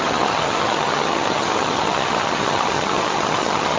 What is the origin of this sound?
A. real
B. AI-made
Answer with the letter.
B